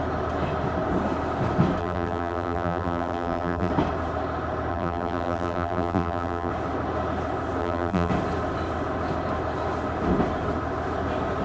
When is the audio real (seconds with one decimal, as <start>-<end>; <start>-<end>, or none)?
0.0-1.8; 3.7-4.7; 6.5-7.6; 8.1-11.4